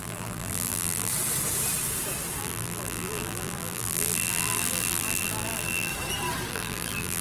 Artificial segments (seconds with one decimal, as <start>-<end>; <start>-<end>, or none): 0.0-1.1; 2.4-5.9; 6.5-7.2